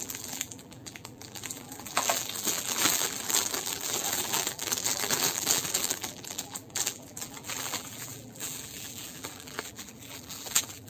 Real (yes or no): no